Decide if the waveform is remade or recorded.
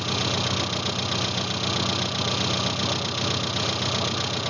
recorded